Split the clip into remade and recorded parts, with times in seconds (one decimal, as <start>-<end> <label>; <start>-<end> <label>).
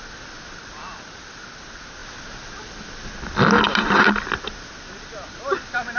0.0-6.0 recorded